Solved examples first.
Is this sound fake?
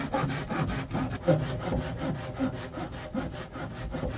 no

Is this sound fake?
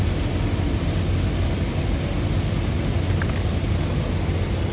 no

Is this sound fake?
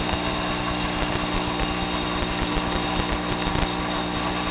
no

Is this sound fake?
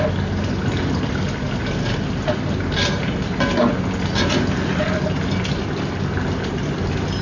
no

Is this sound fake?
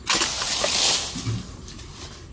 no